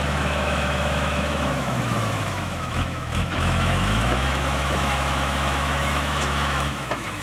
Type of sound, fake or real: fake